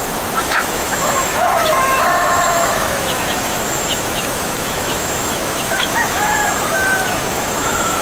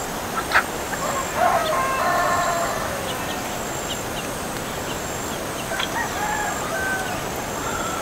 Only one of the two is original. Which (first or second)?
second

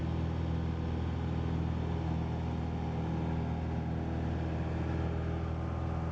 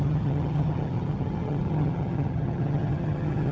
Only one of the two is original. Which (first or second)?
first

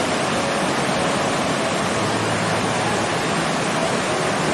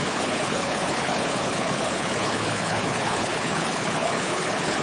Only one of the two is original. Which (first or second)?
first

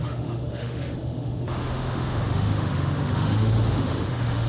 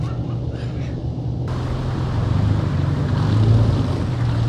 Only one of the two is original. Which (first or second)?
second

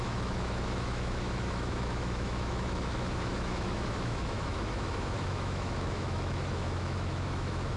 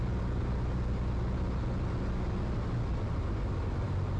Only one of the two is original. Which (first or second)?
second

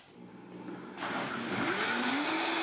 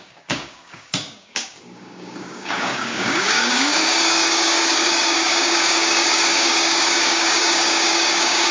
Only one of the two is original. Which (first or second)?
first